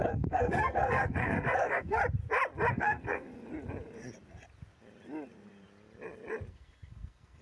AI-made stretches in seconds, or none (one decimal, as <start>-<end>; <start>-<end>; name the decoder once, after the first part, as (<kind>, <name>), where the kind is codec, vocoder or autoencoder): 0.0-2.0 (codec, SNAC); 2.7-3.3; 6.5-7.4